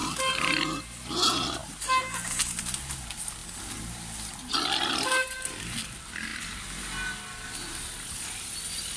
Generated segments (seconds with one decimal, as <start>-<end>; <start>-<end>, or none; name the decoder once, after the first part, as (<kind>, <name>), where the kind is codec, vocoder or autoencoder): none